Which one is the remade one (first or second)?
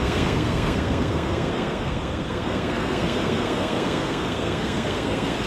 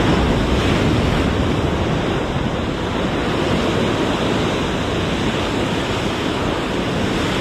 first